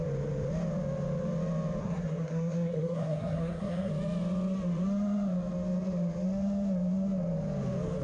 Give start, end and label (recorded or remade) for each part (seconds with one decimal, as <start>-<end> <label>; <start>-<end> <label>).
0.0-1.8 recorded; 1.8-3.9 remade; 3.9-8.0 recorded